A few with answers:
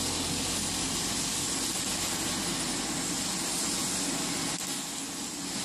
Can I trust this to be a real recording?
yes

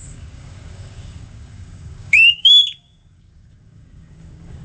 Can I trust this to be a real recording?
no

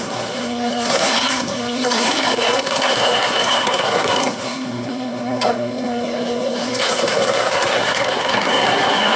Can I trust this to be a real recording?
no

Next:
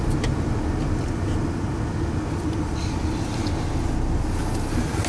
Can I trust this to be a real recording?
yes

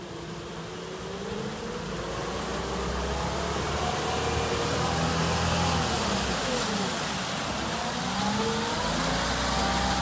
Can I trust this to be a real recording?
yes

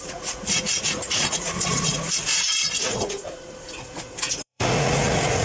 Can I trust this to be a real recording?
no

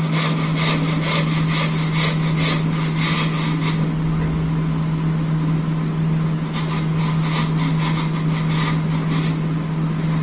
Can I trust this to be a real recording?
yes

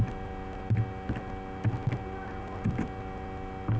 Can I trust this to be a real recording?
yes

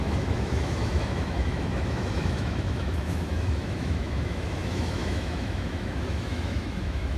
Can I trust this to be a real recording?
no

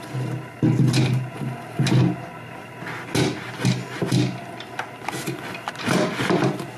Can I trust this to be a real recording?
yes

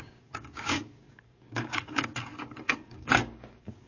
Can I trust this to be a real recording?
no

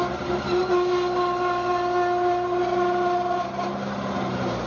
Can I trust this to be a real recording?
yes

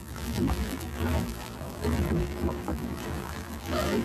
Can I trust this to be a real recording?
no